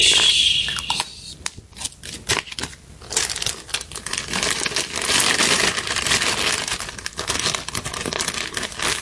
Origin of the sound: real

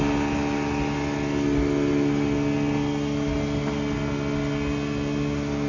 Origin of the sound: real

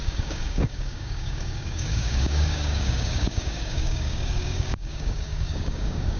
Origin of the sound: fake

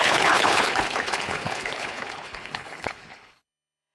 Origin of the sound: fake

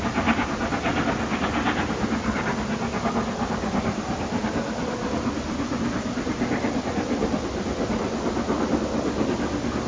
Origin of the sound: real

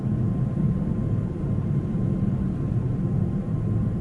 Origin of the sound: fake